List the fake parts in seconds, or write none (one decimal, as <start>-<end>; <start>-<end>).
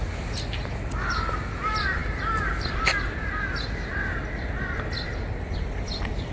none